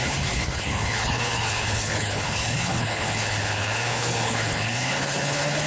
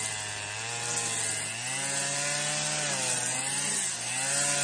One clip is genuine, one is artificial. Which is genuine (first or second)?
second